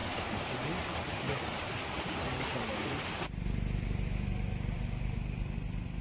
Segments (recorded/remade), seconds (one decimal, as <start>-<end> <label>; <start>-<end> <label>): 0.0-6.0 recorded